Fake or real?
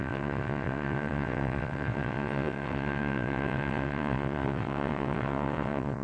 fake